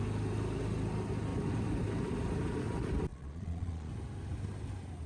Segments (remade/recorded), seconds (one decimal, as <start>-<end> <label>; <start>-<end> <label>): 0.0-3.1 recorded; 3.1-3.9 remade; 3.9-5.1 recorded